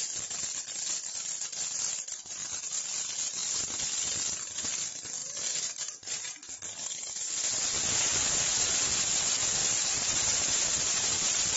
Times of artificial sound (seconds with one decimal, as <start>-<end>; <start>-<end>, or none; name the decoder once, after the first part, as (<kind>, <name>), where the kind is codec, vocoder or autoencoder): 5.2-6.2 (vocoder, BigVGAN v2); 9.6-11.6